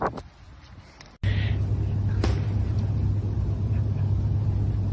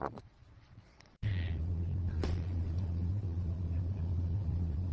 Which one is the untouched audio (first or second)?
first